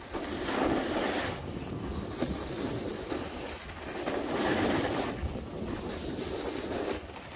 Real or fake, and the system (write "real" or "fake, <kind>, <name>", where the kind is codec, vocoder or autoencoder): real